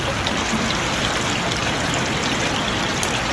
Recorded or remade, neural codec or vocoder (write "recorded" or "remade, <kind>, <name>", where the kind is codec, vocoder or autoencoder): recorded